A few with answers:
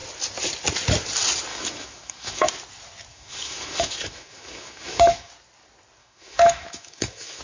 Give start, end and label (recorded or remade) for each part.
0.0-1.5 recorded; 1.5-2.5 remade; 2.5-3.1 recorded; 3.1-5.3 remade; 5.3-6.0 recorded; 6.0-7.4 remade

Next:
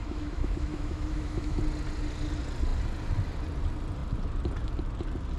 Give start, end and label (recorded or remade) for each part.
0.0-1.6 remade; 1.6-5.4 recorded

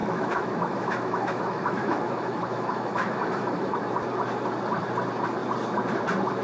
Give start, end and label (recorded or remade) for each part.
0.0-3.8 remade; 3.8-6.4 recorded

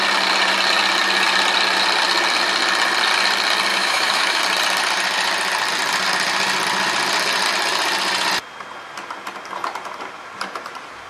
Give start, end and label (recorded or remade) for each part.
0.0-3.7 recorded; 3.7-4.4 remade; 4.4-11.1 recorded

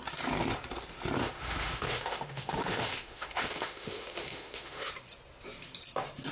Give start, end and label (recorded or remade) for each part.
0.0-1.2 recorded; 1.2-4.9 remade; 4.9-6.3 recorded

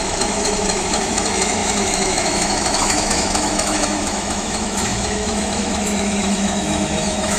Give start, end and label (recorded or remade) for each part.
0.0-7.4 remade

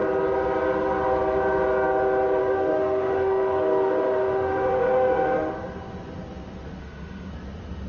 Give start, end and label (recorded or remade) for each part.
0.0-2.4 recorded; 2.4-5.5 remade; 5.5-6.8 recorded; 6.8-7.3 remade; 7.3-7.9 recorded